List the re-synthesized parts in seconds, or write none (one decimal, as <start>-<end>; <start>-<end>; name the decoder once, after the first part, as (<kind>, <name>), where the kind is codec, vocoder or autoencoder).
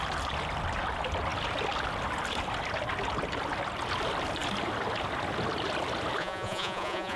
6.2-7.2 (vocoder, Vocos)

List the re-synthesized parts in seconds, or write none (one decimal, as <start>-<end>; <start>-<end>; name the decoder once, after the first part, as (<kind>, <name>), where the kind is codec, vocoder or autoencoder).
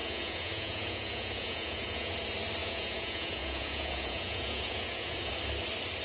0.0-2.1 (vocoder, Vocos); 2.6-5.3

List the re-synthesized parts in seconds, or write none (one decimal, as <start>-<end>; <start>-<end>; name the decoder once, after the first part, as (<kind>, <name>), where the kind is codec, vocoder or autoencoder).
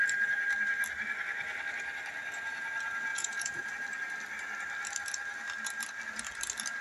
3.1-3.7 (vocoder, Vocos)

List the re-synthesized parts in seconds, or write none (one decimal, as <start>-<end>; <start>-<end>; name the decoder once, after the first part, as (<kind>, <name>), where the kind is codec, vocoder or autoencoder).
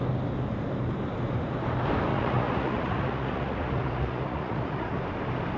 2.1-5.0 (vocoder, Vocos)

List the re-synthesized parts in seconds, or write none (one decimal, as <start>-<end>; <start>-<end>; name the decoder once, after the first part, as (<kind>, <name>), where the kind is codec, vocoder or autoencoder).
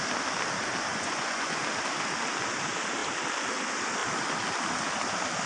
0.9-1.6 (vocoder, Vocos)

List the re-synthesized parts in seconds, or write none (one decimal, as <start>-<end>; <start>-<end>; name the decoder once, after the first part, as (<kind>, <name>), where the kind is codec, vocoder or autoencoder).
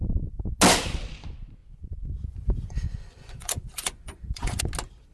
1.6-4.6 (vocoder, Vocos)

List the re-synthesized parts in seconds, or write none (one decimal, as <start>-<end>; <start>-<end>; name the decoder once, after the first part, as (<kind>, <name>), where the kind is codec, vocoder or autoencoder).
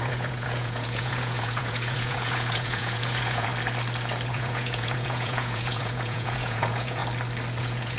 0.0-3.5 (vocoder, Vocos); 4.3-7.0; 7.6-8.0